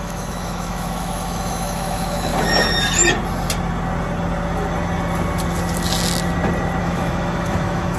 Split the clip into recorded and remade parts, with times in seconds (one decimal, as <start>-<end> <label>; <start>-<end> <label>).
0.0-2.3 remade; 2.3-6.8 recorded; 6.8-8.0 remade